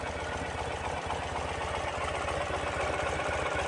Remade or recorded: recorded